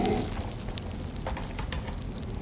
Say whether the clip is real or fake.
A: real